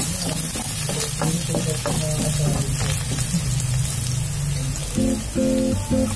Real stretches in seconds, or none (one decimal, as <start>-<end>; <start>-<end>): 0.0-6.2